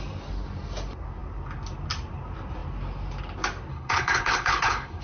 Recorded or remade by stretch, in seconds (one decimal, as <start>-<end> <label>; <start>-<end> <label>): 0.0-3.7 recorded; 3.7-5.0 remade

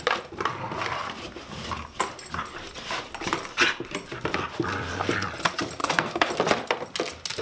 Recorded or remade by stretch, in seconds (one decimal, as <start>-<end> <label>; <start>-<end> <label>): 0.0-5.8 recorded; 5.8-6.3 remade; 6.3-7.4 recorded

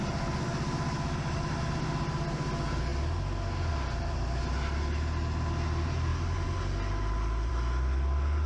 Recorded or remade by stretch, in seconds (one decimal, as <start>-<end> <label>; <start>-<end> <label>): 0.0-8.5 recorded

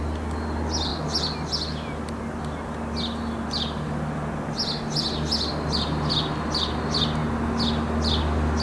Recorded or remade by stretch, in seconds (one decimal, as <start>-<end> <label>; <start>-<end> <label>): 0.0-8.6 recorded

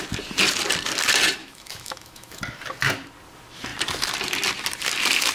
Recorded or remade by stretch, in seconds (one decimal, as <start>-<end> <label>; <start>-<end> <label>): 0.0-1.4 recorded; 1.4-2.4 remade; 2.4-5.3 recorded

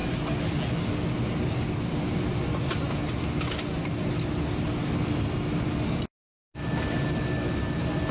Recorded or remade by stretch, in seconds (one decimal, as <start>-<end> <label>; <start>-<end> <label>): 0.0-8.1 recorded